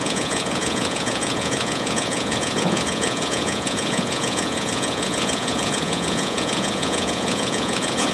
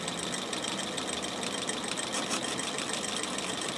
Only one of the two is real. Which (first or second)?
second